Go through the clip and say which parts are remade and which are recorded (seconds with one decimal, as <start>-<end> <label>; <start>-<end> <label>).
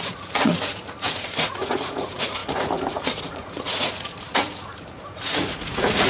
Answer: 0.0-6.1 remade